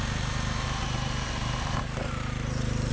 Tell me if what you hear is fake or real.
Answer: fake